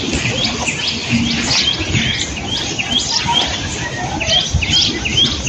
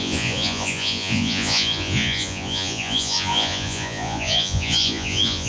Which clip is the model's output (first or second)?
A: second